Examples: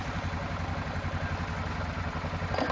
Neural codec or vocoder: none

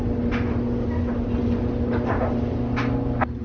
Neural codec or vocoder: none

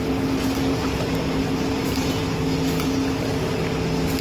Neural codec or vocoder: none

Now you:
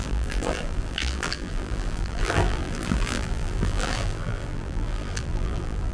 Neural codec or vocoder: vocoder, BigVGAN v2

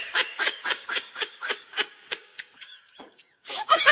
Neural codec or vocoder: codec, DAC